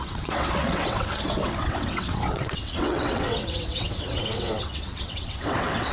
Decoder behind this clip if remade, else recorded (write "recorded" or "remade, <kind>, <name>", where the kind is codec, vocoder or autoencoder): remade, vocoder, WaveNeXt